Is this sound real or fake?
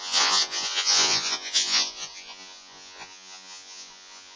fake